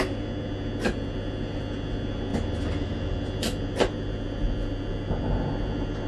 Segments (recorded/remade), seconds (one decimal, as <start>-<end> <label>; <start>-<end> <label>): 0.0-6.1 recorded